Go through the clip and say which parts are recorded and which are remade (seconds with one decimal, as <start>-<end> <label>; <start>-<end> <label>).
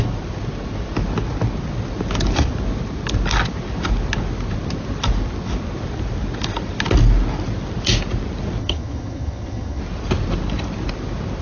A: 0.0-8.6 recorded; 8.6-9.8 remade; 9.8-11.4 recorded